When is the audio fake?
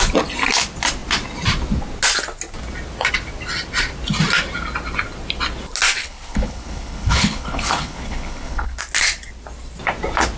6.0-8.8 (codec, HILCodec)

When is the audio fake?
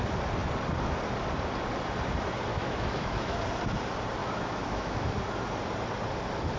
2.5-3.4 (autoencoder, DAC-VAE); 4.2-5.1